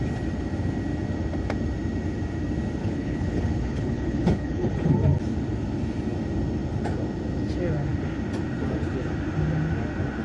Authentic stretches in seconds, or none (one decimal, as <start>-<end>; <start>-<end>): 0.0-2.8; 4.9-10.2